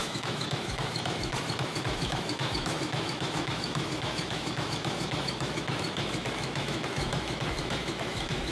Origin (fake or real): fake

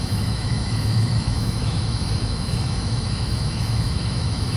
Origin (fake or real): fake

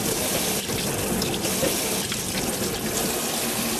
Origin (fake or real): real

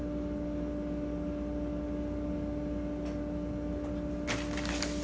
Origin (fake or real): real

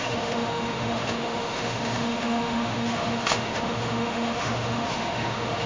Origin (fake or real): fake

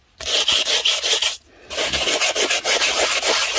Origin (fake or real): real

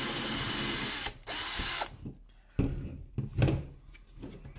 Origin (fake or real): real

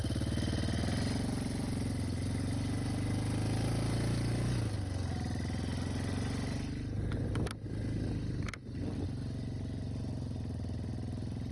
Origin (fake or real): real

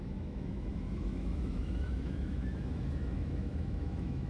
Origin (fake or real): fake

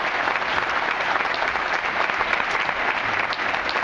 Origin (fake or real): real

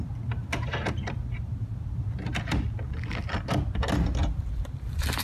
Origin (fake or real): real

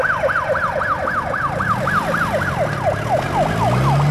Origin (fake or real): real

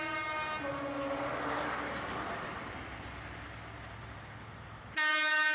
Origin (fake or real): real